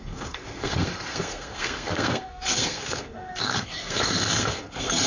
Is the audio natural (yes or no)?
no